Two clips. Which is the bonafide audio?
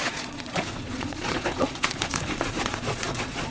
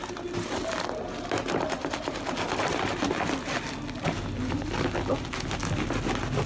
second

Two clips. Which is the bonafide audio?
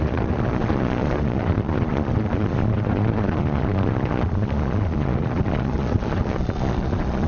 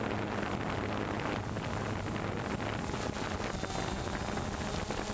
second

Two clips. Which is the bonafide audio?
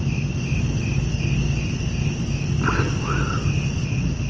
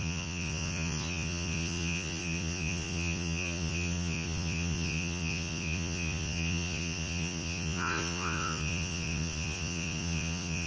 first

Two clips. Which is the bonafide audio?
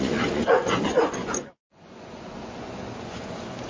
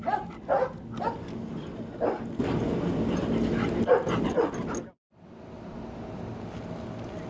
second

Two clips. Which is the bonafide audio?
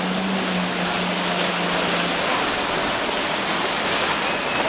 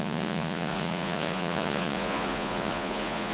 first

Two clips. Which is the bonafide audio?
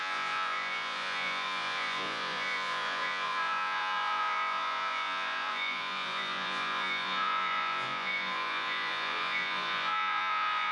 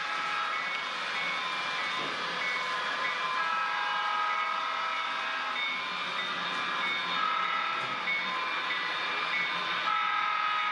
second